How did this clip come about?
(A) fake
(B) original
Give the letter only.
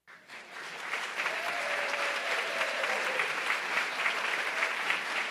A